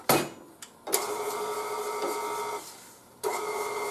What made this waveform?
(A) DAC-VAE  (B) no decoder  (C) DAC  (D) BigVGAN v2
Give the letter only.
B